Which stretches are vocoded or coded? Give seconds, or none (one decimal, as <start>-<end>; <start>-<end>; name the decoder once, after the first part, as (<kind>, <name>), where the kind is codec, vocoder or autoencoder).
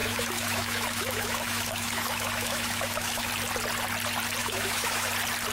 0.0-3.3 (autoencoder, DAC-VAE); 4.4-5.1